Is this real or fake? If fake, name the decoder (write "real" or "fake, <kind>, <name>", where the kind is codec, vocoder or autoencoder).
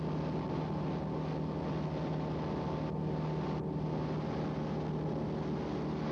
real